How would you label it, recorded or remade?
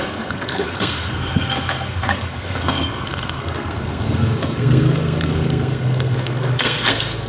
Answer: remade